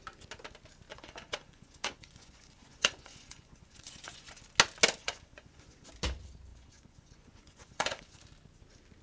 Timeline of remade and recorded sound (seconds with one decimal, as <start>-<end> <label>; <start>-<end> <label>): 0.0-0.9 recorded; 0.9-4.4 remade; 4.4-5.0 recorded; 5.0-5.9 remade; 5.9-6.5 recorded; 6.5-8.2 remade; 8.2-9.0 recorded